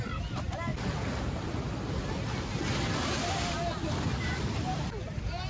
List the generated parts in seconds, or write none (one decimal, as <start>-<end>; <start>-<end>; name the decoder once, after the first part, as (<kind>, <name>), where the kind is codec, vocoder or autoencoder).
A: 0.0-0.7 (vocoder, BigVGAN v2); 4.0-5.5